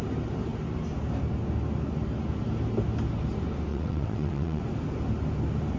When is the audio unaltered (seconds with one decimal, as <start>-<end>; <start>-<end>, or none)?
0.0-3.7; 4.6-5.8